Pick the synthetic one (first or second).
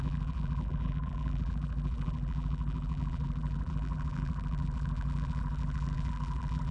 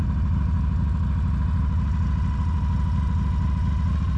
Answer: first